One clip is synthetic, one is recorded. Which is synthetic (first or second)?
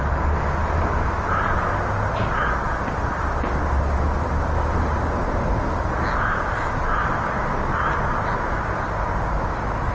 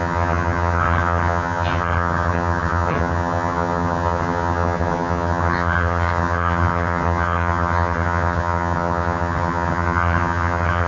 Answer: second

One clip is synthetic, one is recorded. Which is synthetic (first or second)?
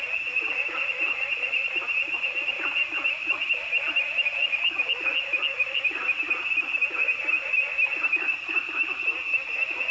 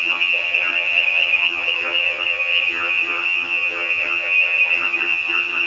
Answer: second